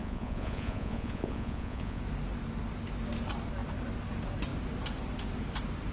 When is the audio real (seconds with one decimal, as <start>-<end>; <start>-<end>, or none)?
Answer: 2.0-5.9